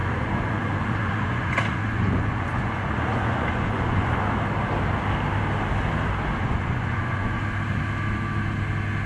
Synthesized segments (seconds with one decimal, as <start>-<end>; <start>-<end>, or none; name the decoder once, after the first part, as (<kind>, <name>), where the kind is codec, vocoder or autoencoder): 0.0-4.2 (vocoder, Vocos); 6.4-7.4